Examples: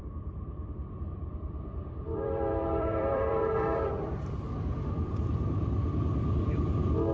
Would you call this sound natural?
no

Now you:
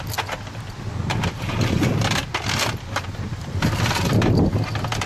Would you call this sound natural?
yes